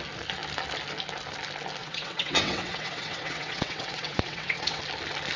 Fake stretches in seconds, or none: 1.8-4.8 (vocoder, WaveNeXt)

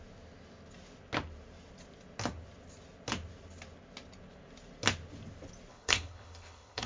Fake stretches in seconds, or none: 5.7-6.9 (codec, HILCodec)

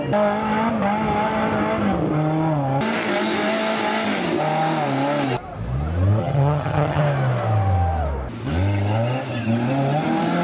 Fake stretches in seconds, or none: 6.2-7.0 (vocoder, HiFi-GAN)